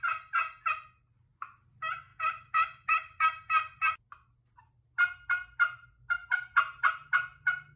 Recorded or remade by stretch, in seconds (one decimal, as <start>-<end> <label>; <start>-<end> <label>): 0.0-6.2 recorded; 6.2-6.9 remade; 6.9-7.8 recorded